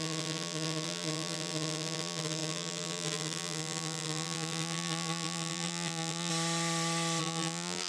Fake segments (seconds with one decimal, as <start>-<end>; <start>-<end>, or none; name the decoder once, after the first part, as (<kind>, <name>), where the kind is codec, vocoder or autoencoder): 0.0-6.3 (vocoder, BigVGAN v2); 7.2-7.9